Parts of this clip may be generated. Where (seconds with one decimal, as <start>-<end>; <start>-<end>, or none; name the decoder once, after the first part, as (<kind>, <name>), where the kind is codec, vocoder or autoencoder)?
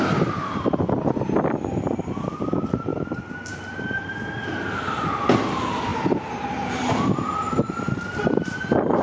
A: 2.9-4.4 (vocoder, BigVGAN v2); 5.9-8.6